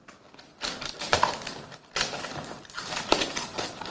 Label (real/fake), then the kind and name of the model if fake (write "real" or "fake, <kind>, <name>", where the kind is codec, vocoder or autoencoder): real